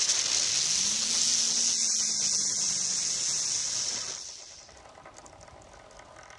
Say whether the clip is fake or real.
real